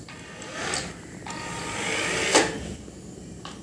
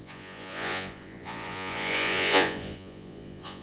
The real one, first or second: first